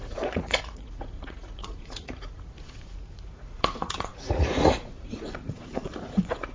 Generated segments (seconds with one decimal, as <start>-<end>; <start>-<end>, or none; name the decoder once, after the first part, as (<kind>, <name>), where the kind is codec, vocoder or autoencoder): 0.0-6.5 (vocoder, Vocos)